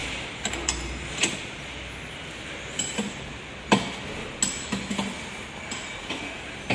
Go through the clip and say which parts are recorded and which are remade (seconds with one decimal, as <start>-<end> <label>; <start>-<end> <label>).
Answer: 0.0-1.3 remade; 1.3-6.7 recorded